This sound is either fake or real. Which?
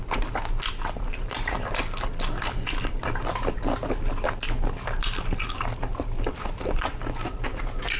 real